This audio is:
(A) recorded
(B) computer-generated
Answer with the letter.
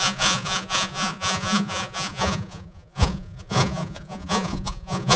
B